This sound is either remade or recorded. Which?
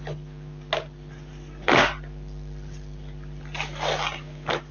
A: recorded